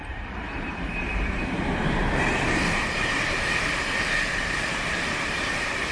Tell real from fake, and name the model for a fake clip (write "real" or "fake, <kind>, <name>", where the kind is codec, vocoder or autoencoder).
fake, vocoder, BigVGAN v2